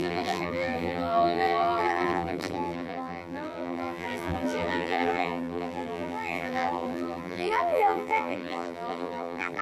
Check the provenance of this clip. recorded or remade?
remade